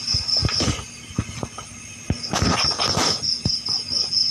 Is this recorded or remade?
recorded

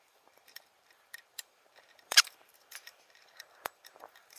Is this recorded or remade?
remade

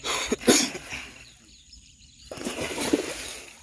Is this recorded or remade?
remade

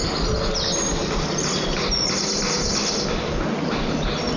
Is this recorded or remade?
recorded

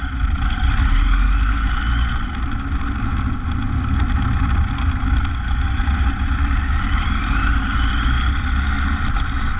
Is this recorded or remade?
recorded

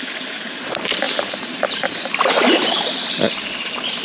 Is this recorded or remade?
remade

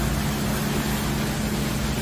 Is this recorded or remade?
recorded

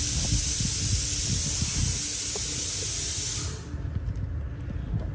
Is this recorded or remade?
recorded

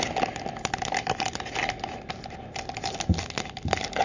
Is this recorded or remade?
recorded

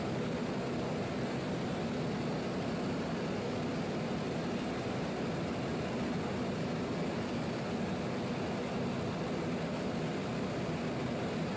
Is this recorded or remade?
recorded